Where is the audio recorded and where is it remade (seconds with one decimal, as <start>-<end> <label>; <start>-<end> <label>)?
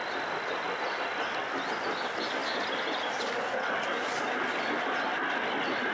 0.0-5.9 recorded